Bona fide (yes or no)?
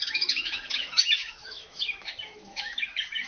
no